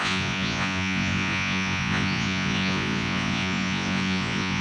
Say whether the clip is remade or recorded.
remade